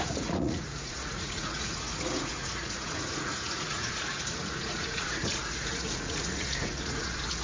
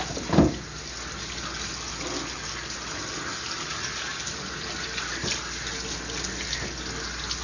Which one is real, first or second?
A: second